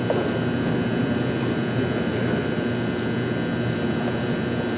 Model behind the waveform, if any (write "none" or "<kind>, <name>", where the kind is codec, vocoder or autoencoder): none